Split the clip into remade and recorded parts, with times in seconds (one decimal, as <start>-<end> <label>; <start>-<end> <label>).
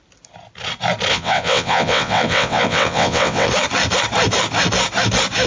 0.0-1.1 recorded; 1.1-3.5 remade; 3.5-5.5 recorded